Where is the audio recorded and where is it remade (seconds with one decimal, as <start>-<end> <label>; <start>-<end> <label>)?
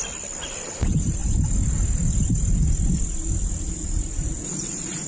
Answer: 0.0-5.1 recorded